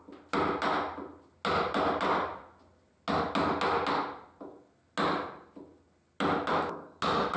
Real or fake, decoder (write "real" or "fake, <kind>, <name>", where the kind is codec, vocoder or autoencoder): real